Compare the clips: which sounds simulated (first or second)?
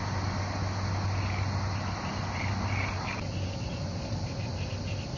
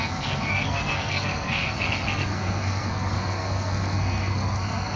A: second